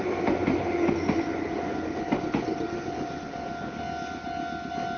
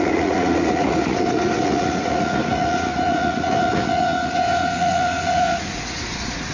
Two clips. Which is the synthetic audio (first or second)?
second